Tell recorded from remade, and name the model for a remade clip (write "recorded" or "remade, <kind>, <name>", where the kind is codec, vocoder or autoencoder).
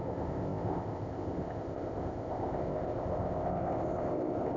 remade, codec, ZipCodec